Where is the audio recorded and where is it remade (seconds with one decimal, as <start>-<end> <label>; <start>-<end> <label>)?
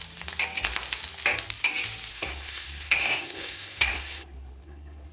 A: 0.0-2.1 recorded; 2.1-5.1 remade